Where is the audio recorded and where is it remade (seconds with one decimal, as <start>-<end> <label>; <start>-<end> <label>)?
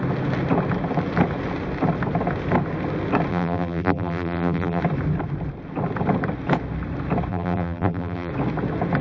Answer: 0.0-3.3 recorded; 3.3-4.8 remade; 4.8-7.3 recorded; 7.3-8.3 remade; 8.3-9.0 recorded